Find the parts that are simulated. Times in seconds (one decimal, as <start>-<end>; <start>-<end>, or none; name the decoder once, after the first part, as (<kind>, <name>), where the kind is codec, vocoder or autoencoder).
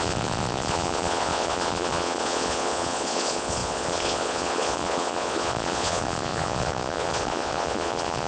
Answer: 0.0-8.3 (vocoder, Vocos)